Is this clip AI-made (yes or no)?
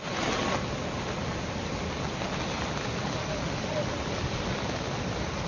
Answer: no